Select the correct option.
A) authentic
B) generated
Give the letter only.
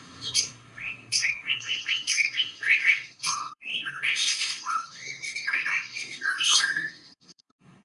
B